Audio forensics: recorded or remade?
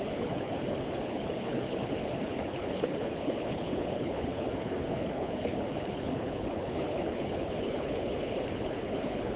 remade